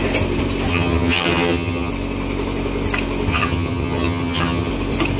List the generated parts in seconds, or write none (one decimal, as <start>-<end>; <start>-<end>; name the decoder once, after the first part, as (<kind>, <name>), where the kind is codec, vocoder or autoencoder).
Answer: 0.7-1.9 (vocoder, HiFi-GAN); 3.3-4.7